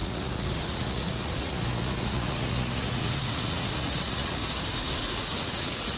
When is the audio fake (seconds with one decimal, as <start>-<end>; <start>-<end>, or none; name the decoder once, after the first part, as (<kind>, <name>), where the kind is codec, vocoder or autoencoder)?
0.0-4.4 (vocoder, Vocos); 5.0-6.0